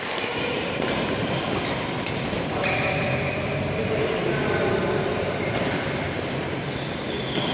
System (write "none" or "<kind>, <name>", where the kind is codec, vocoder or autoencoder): vocoder, BigVGAN v2